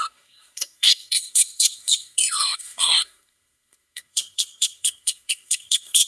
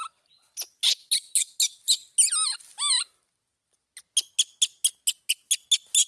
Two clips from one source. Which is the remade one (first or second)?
first